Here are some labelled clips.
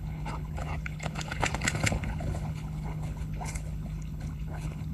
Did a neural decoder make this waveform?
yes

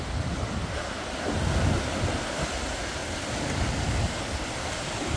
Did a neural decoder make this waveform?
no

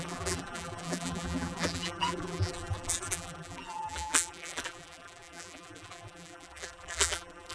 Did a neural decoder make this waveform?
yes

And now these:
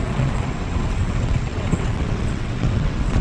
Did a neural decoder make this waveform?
yes